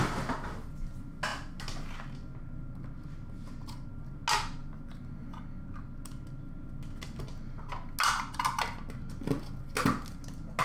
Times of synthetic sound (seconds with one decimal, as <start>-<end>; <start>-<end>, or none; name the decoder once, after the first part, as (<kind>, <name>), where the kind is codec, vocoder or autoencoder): none